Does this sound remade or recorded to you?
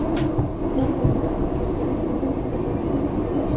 recorded